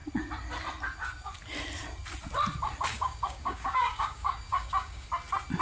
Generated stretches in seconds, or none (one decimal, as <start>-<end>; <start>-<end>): 2.9-5.1